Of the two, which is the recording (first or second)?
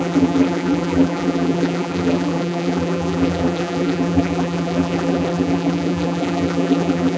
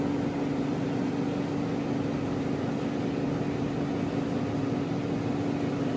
second